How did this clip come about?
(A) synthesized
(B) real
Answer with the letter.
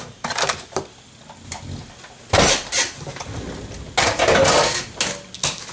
B